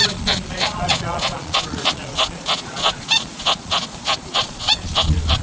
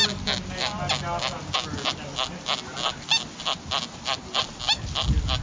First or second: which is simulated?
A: first